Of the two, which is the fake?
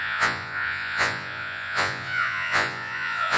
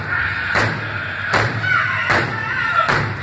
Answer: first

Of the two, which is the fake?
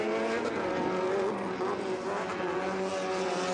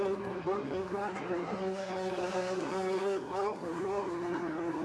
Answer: second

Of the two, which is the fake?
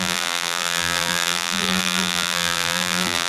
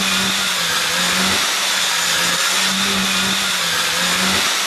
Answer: first